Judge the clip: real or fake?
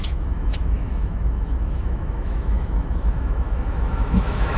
fake